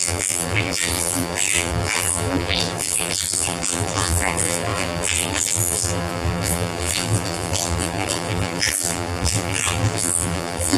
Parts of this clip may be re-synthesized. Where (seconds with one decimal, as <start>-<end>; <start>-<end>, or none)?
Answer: 0.0-10.8